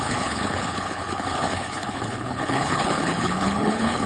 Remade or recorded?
remade